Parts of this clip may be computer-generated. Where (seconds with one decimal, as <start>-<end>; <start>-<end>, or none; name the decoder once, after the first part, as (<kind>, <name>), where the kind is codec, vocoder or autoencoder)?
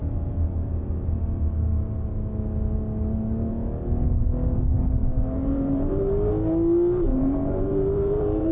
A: 5.0-6.3 (vocoder, BigVGAN v2); 7.1-8.5